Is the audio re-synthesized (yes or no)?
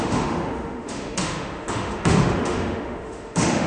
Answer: yes